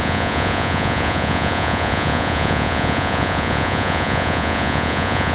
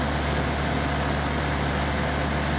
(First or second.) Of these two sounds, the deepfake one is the first